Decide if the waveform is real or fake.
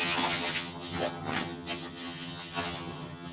fake